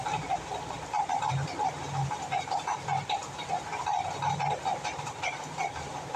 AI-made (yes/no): yes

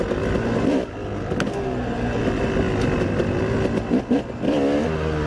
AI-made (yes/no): no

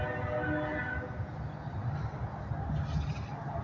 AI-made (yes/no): no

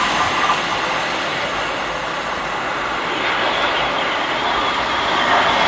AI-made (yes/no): yes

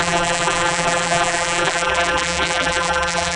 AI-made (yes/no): yes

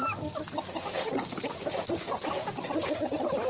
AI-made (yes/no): no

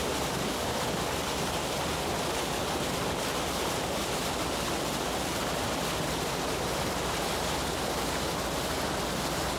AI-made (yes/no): no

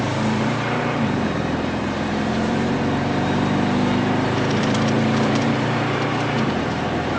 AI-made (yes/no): yes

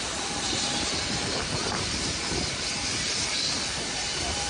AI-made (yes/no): yes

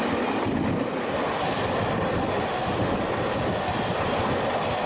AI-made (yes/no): no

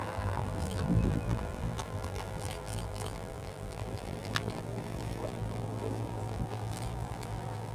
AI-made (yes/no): yes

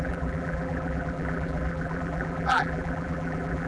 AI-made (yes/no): yes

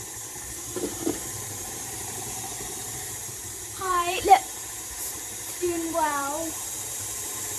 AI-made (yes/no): yes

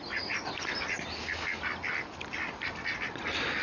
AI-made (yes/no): yes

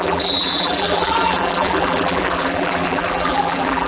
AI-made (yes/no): yes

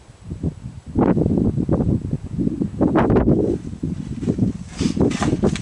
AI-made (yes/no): yes